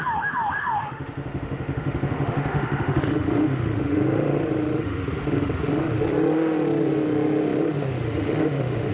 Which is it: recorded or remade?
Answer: remade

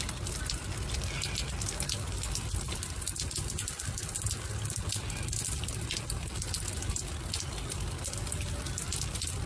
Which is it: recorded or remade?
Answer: recorded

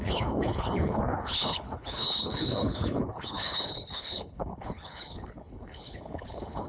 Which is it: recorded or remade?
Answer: remade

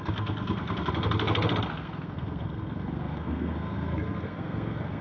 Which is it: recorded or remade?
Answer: remade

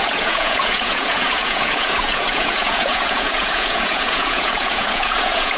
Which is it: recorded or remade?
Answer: remade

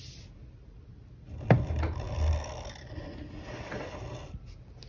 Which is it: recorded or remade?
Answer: recorded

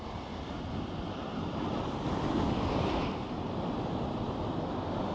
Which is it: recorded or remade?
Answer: recorded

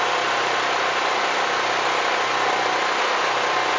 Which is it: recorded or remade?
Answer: recorded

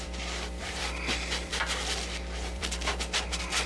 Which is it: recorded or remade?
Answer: remade